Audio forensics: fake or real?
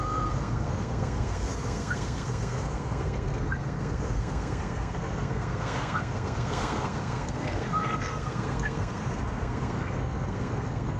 fake